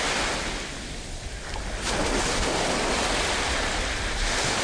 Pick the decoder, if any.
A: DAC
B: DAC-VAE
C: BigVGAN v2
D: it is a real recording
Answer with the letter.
D